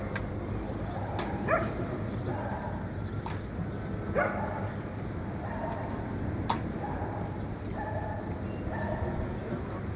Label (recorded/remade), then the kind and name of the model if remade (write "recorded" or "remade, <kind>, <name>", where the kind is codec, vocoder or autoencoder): recorded